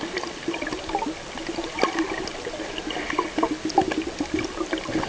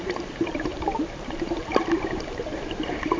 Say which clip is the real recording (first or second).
first